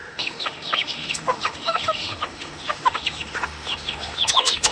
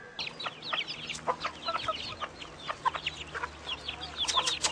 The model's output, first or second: first